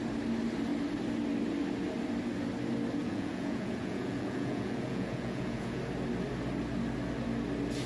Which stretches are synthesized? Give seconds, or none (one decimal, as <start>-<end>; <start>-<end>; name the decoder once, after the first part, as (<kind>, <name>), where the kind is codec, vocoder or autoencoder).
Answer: 3.0-5.8 (vocoder, Vocos)